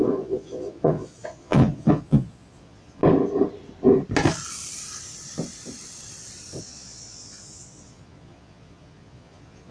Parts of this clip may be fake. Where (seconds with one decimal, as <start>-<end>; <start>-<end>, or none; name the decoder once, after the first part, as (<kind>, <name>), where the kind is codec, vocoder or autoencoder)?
0.0-3.0 (vocoder, Vocos); 6.6-9.7